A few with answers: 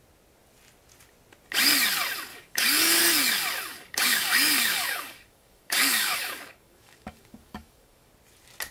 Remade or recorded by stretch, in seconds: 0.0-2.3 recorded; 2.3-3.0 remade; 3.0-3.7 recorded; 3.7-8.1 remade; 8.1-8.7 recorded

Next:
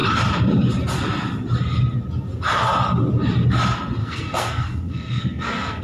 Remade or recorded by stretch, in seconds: 0.0-4.0 recorded; 4.0-5.8 remade